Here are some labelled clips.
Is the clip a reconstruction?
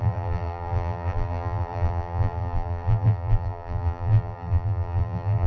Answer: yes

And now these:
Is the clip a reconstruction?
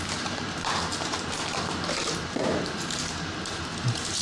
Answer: yes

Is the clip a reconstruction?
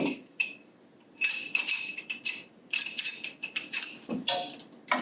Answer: yes